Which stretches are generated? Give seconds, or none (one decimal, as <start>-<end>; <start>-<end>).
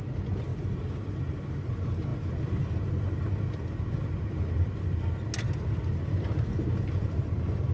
none